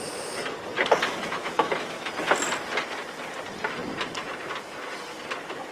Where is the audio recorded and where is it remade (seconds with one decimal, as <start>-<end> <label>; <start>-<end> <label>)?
0.0-1.4 recorded; 1.4-2.1 remade; 2.1-5.7 recorded